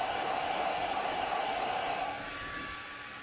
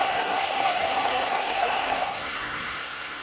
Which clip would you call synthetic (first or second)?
second